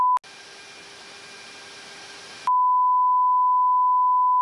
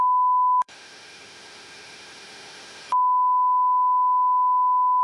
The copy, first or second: second